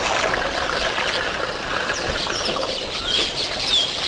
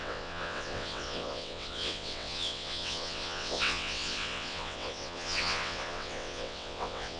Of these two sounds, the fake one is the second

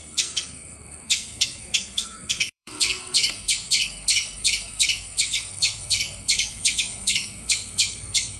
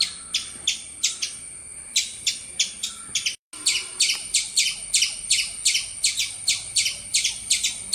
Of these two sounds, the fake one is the first